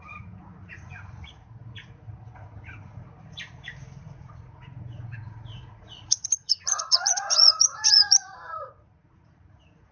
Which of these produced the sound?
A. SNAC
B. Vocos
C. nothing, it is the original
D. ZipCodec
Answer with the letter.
B